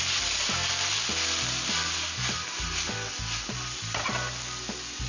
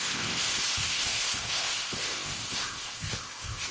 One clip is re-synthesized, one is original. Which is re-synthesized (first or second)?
second